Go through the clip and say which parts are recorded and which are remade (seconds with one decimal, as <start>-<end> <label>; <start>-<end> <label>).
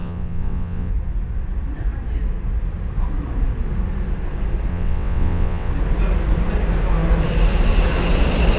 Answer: 0.0-0.9 remade; 0.9-4.7 recorded; 4.7-5.7 remade; 5.7-8.6 recorded